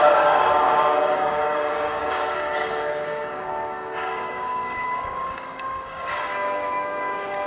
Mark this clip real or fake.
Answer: fake